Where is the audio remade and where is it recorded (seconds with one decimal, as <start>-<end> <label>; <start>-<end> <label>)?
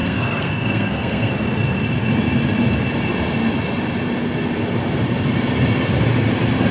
0.0-1.3 remade; 1.3-6.7 recorded